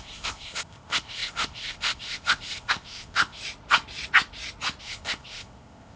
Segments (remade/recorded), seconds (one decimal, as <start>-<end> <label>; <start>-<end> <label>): 0.0-3.4 remade; 3.4-4.8 recorded; 4.8-6.0 remade